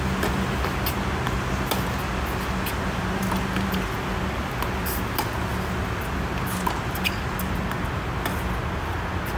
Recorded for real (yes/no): yes